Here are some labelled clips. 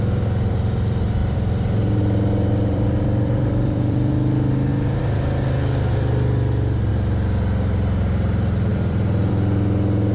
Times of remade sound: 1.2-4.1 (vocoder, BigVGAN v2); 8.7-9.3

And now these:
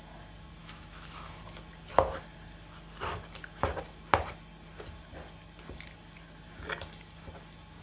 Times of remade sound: 0.6-1.4 (autoencoder, DAC-VAE)